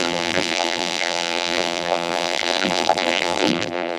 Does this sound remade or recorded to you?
remade